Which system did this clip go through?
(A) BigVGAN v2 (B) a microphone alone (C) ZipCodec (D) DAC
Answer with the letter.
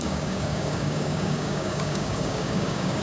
D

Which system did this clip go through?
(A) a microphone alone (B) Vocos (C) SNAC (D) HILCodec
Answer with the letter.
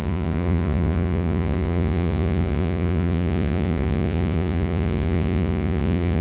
B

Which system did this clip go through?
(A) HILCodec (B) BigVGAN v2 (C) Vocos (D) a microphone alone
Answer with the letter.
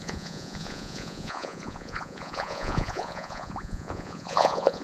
C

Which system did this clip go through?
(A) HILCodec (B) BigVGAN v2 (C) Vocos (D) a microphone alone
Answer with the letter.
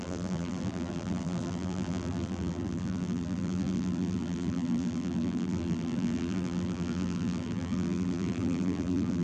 B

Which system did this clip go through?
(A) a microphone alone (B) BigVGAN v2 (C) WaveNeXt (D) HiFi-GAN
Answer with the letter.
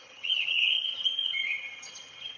D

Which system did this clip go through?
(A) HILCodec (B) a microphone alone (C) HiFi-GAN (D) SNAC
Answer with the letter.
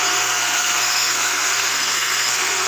D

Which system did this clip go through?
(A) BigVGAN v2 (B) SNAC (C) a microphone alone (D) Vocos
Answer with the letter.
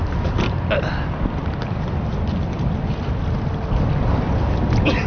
C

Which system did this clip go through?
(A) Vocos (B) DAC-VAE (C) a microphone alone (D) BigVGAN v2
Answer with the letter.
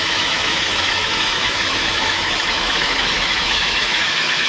B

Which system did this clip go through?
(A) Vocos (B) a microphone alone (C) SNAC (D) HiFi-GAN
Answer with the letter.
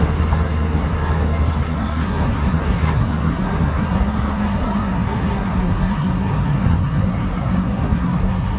C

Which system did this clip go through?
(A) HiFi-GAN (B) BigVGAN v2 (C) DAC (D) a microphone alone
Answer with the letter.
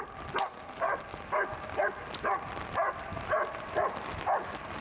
D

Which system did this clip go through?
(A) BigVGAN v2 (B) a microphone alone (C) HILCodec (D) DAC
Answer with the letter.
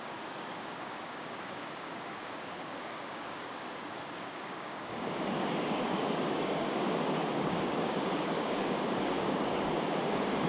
D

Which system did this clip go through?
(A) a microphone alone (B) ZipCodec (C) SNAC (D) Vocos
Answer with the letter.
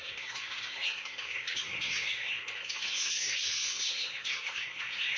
C